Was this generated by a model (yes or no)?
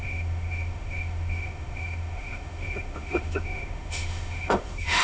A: yes